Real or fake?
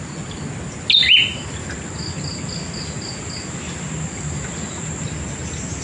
real